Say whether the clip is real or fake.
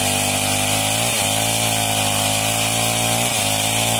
real